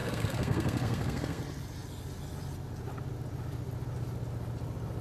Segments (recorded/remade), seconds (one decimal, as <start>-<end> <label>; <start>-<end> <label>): 0.0-1.4 remade; 1.4-5.0 recorded